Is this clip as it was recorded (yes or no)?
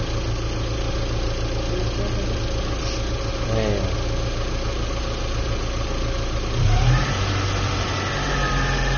yes